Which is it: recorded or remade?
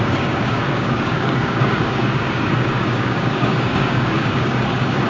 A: remade